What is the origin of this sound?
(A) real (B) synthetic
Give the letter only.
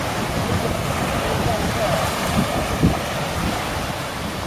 A